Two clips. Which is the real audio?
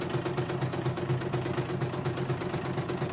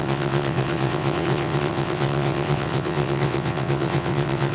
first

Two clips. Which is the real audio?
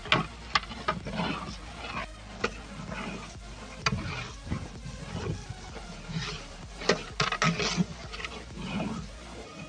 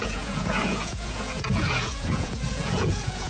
first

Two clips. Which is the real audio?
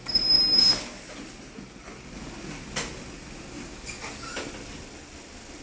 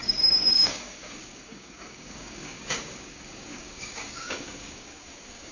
first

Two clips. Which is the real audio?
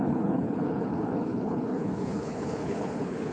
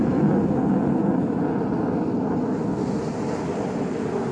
second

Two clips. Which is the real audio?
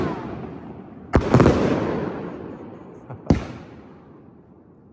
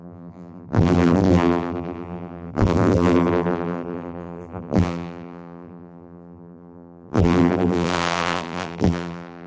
first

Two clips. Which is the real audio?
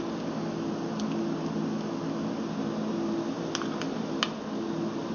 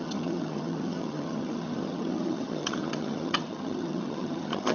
first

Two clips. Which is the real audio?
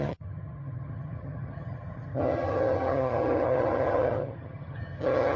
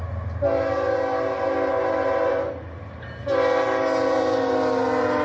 second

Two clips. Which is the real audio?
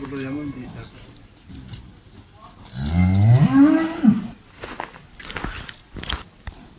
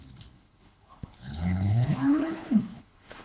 first